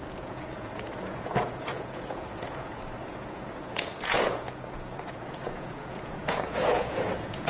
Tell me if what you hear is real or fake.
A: fake